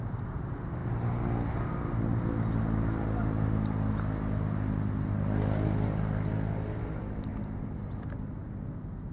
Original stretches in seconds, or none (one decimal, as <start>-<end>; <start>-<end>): 0.0-9.1